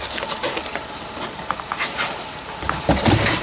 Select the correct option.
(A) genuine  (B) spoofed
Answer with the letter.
A